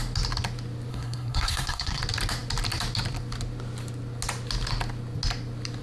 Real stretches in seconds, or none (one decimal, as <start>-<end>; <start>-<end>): 0.0-0.9; 2.0-5.8